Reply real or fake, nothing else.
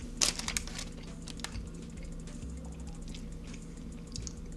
real